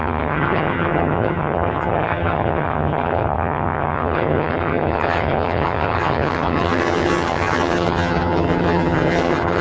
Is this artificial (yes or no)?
yes